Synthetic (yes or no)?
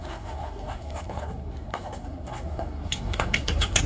yes